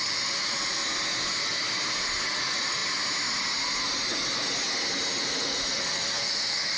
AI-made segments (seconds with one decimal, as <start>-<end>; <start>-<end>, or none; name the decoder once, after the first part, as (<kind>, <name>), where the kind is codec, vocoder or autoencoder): 0.0-0.8 (vocoder, Vocos); 2.4-2.8; 5.2-6.8